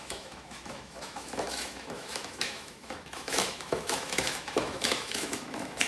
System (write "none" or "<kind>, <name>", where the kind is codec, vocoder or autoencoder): autoencoder, DAC-VAE